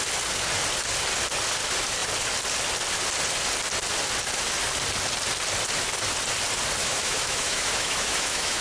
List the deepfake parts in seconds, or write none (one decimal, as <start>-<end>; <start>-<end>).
6.8-8.6